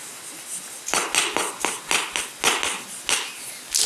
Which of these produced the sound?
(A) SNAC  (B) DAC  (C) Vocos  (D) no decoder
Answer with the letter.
D